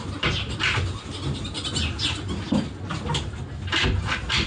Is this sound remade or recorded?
recorded